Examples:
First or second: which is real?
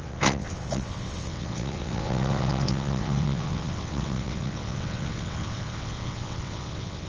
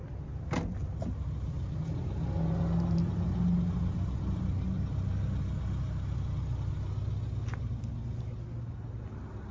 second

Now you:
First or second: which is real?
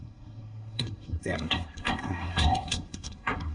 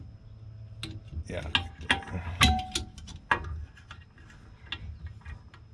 second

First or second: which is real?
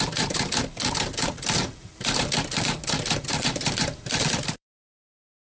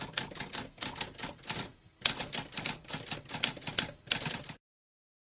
second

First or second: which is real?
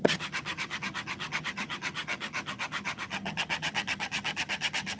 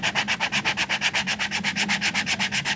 second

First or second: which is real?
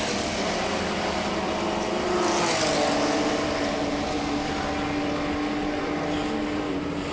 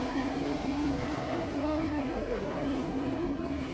first